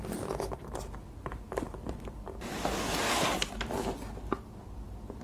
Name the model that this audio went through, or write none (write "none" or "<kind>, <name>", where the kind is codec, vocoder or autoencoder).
none